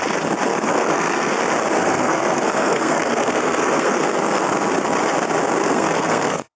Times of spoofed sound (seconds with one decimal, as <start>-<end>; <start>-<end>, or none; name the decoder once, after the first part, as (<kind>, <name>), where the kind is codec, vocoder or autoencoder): 0.5-1.3 (codec, SNAC); 1.8-4.5; 5.6-6.6

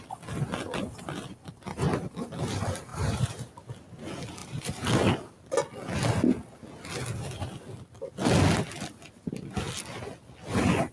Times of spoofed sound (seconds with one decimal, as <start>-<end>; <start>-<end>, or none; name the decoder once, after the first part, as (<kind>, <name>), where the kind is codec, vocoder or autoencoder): 2.9-3.5 (vocoder, BigVGAN v2); 4.4-4.9

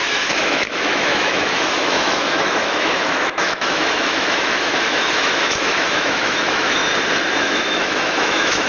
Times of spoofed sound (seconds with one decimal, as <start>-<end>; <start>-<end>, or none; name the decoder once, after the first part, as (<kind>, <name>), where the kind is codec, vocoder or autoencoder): 0.0-6.8 (autoencoder, DAC-VAE); 7.4-8.7

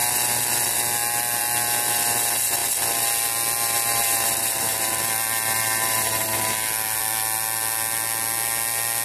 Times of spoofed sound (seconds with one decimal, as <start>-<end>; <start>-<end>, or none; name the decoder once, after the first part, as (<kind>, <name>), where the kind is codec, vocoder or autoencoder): none

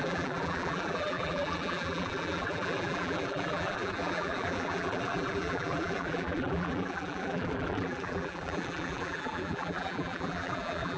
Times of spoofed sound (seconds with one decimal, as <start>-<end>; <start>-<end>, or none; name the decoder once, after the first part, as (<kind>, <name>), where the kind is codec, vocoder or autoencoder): 0.0-11.0 (vocoder, BigVGAN v2)

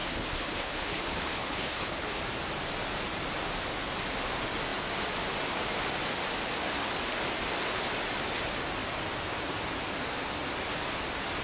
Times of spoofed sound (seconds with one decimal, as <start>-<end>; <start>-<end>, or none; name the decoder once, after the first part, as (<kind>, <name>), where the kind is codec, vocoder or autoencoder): 0.0-2.2 (codec, HILCodec)

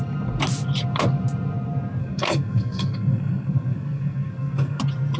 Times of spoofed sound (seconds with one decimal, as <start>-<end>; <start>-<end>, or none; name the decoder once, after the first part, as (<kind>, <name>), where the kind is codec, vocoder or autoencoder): 2.0-4.8 (codec, SNAC)

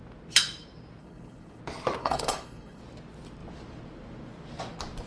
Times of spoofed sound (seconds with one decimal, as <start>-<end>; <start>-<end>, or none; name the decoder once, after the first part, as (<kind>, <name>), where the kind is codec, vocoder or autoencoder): 1.0-1.6 (codec, HILCodec); 2.0-2.8